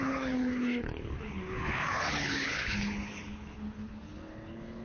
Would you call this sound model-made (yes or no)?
yes